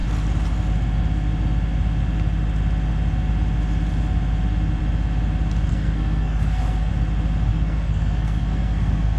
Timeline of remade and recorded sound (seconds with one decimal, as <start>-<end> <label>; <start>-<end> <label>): 0.0-5.7 recorded; 5.7-6.9 remade; 6.9-7.5 recorded; 7.5-9.2 remade